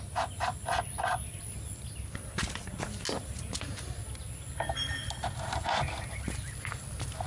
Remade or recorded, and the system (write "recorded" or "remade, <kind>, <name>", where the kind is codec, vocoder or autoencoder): recorded